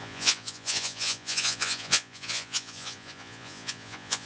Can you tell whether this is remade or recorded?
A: remade